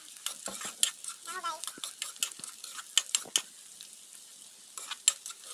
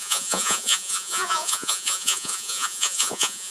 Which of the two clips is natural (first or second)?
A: first